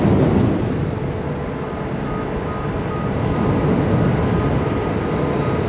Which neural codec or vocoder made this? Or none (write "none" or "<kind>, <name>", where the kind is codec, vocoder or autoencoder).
none